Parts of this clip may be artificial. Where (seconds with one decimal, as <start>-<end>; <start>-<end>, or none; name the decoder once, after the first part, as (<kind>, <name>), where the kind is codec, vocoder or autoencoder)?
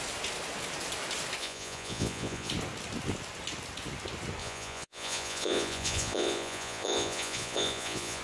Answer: 1.4-2.5 (vocoder, Vocos); 4.4-8.2